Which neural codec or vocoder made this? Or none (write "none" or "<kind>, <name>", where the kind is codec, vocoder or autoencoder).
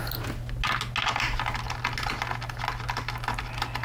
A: none